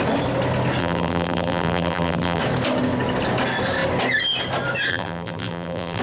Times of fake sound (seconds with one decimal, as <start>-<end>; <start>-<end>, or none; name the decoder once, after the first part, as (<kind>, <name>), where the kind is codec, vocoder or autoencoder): 0.8-2.4 (vocoder, BigVGAN v2); 4.9-6.0